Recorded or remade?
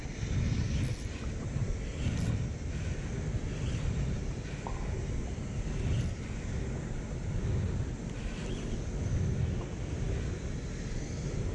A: recorded